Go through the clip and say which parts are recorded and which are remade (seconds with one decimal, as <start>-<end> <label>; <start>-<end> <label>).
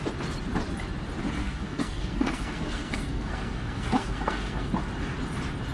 0.0-1.4 recorded; 1.4-4.7 remade; 4.7-5.7 recorded